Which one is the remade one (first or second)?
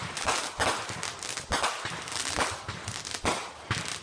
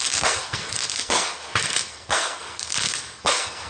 second